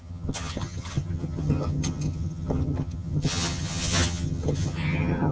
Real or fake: fake